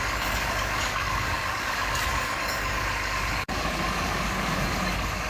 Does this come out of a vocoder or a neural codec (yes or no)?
yes